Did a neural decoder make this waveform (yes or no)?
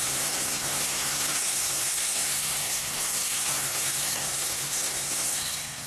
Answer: yes